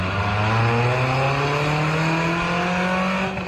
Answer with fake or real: real